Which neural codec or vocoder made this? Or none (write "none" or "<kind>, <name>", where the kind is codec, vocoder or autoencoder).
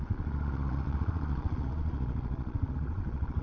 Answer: vocoder, Vocos